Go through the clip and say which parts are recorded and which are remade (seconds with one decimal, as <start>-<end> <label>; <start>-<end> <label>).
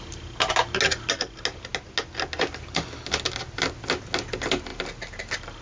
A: 0.0-5.6 recorded